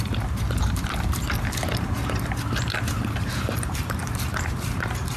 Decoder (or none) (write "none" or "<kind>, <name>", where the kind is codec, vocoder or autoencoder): vocoder, BigVGAN v2